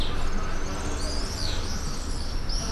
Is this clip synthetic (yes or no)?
no